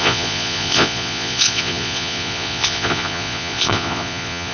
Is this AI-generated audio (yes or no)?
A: yes